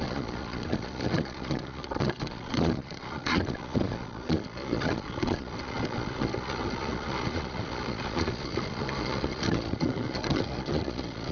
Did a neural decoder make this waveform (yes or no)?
yes